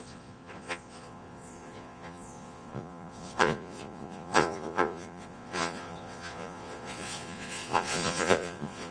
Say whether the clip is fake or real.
fake